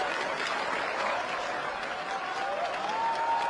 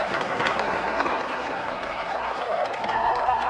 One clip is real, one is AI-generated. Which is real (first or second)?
first